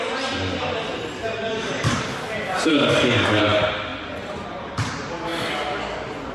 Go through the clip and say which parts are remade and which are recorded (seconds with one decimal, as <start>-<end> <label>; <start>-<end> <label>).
0.0-1.5 recorded; 1.5-2.0 remade; 2.0-2.7 recorded; 2.7-3.4 remade; 3.4-6.3 recorded